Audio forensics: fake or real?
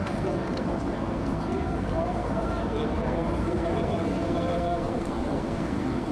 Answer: fake